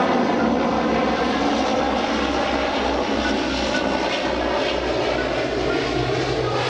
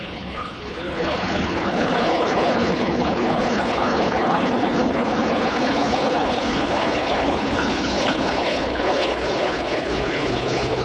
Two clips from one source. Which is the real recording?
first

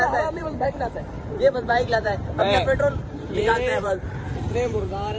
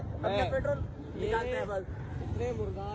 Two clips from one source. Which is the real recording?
second